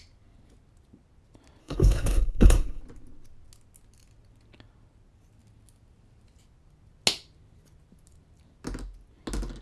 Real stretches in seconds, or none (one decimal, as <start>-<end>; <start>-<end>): 0.0-1.6; 2.8-9.6